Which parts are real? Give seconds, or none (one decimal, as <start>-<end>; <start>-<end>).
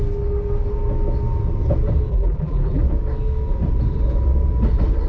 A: 0.0-2.1; 2.8-5.1